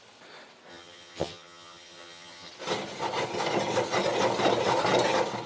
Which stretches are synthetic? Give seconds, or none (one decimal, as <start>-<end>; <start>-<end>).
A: 0.7-2.5